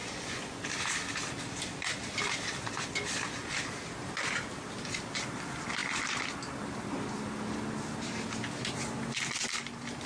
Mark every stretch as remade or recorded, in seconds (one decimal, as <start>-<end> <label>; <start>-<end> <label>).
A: 0.0-0.6 remade; 0.6-10.1 recorded